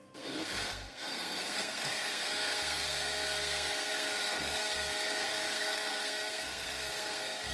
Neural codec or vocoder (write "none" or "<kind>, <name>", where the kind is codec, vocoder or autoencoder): codec, SNAC